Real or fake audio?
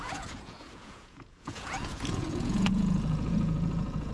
fake